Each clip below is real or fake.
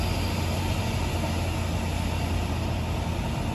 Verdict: real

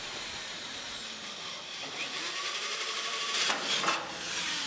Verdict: fake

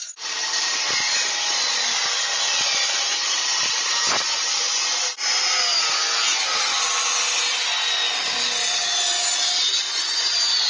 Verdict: real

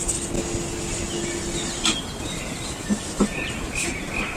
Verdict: real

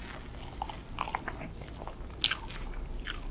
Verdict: real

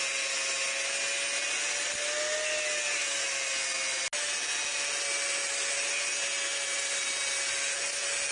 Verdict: real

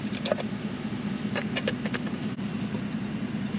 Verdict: real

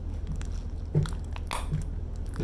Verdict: real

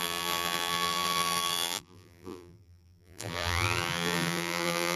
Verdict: fake